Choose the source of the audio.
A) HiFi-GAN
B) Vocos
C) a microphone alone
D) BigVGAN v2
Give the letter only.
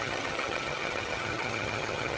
A